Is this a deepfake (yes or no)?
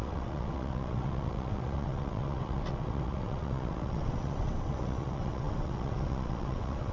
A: yes